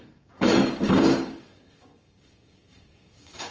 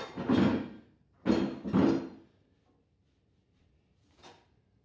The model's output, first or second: first